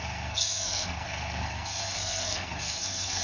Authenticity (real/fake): fake